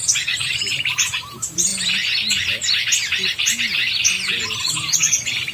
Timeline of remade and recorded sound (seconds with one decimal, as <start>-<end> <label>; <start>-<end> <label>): 0.0-1.7 remade; 1.7-4.4 recorded; 4.4-5.5 remade